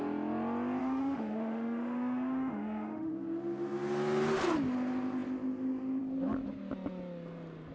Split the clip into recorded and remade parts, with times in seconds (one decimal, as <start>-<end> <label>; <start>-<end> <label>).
0.0-0.8 recorded; 0.8-3.1 remade; 3.1-7.7 recorded